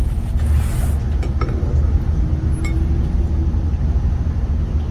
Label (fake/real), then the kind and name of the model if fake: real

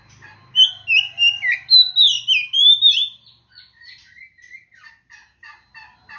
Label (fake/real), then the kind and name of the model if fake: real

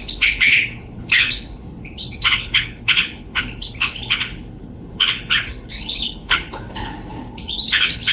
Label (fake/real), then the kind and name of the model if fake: fake, codec, HILCodec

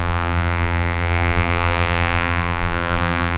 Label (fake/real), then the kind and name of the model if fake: fake, vocoder, BigVGAN v2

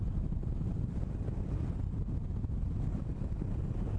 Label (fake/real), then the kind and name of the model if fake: real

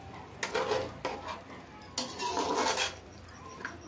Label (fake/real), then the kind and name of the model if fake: real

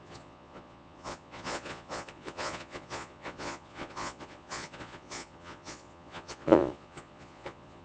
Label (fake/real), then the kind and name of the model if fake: fake, vocoder, Vocos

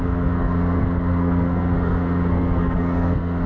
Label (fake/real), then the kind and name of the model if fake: fake, codec, SNAC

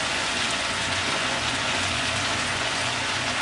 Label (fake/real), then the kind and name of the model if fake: fake, vocoder, Vocos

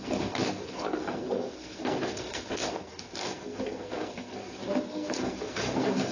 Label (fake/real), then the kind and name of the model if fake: fake, codec, SNAC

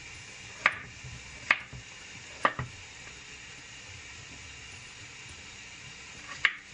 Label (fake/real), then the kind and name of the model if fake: real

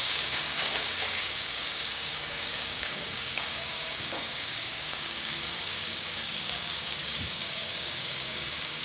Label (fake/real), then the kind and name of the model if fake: fake, codec, DAC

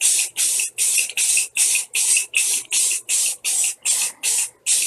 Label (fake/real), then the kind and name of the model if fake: real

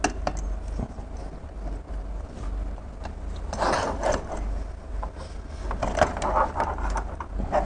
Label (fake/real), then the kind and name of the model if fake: real